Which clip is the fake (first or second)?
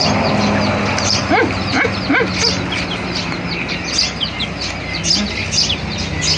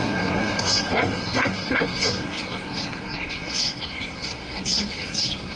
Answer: second